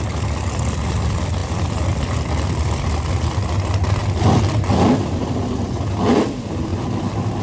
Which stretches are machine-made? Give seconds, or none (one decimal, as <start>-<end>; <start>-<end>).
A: 1.4-2.0